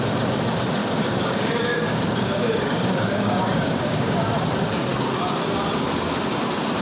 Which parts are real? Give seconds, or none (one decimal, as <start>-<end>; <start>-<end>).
0.0-0.8; 4.4-6.8